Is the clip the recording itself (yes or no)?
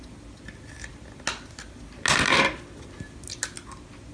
yes